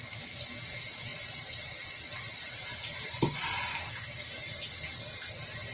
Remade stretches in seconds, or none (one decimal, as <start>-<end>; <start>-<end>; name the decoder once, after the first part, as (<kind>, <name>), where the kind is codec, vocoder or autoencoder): 3.7-4.3 (codec, SNAC)